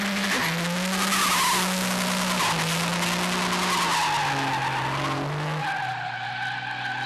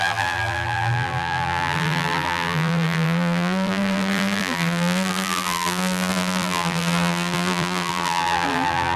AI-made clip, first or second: second